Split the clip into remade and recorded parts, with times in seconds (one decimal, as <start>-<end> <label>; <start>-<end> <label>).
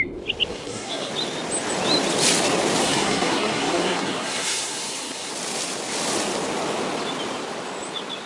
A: 0.0-0.5 recorded; 0.5-1.1 remade; 1.1-2.8 recorded; 2.8-5.3 remade; 5.3-8.3 recorded